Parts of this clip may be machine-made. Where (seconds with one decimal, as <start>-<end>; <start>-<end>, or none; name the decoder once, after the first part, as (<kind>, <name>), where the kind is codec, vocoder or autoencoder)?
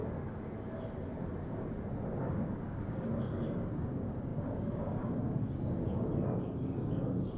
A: 2.3-7.4 (codec, DAC)